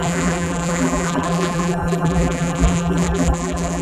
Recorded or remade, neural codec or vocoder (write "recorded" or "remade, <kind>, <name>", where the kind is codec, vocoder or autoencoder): remade, vocoder, BigVGAN v2